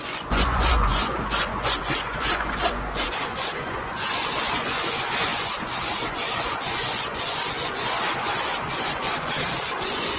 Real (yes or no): no